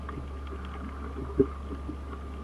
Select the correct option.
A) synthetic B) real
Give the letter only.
B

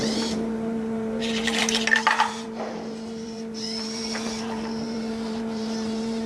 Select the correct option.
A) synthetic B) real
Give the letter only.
A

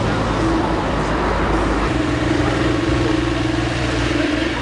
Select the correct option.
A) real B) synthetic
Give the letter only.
B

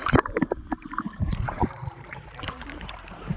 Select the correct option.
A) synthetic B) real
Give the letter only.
A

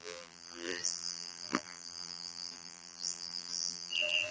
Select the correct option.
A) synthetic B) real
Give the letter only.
A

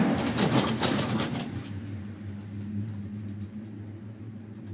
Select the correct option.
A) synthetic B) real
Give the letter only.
A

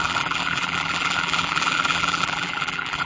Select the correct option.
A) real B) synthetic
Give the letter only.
B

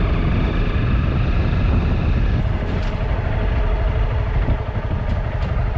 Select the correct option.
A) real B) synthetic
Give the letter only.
A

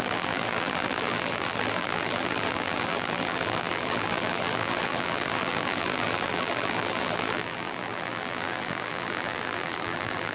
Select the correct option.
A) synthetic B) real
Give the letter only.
A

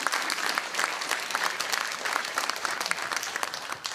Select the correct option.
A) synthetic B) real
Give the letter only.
A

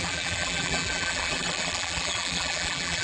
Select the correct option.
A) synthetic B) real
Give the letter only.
A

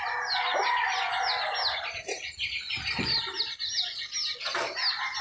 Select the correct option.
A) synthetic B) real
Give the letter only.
B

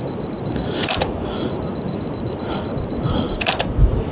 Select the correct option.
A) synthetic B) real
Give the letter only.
A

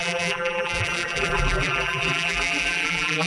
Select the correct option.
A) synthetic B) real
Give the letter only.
A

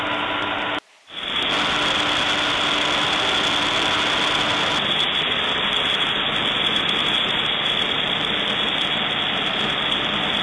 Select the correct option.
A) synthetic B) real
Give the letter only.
B